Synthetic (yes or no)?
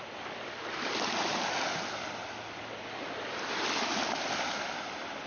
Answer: no